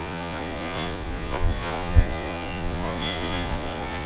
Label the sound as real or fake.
fake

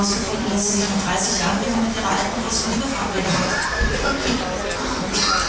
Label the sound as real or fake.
real